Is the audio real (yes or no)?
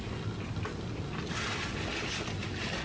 yes